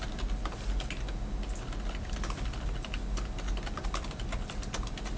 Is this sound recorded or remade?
recorded